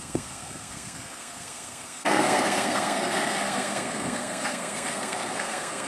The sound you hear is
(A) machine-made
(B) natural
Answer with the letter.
A